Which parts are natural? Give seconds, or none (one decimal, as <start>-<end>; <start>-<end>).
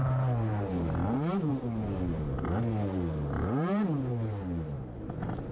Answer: none